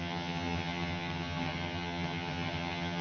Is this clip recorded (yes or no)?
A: no